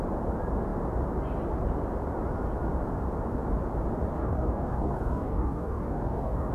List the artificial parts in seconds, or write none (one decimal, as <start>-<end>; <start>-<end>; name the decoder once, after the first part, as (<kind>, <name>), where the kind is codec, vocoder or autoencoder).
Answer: 4.2-6.5 (codec, DAC)